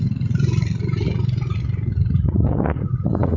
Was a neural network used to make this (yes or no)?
yes